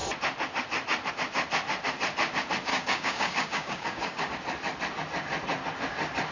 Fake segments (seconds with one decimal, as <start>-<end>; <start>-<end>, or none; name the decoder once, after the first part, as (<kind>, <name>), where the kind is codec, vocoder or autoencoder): 2.7-4.3 (codec, DAC)